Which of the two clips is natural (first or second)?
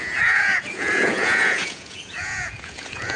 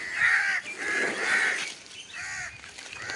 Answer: second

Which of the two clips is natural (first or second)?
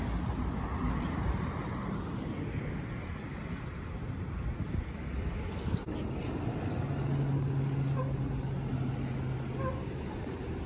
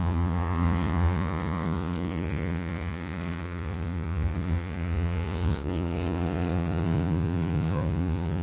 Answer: first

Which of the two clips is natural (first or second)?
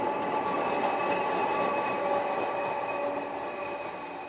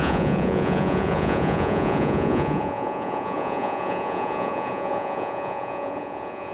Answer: first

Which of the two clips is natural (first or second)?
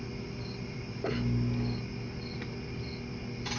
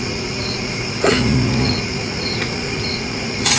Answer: first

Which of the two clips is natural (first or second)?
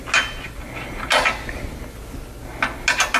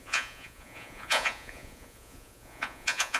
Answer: first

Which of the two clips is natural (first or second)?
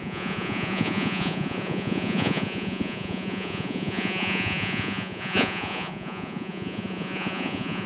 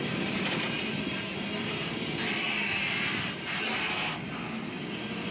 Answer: second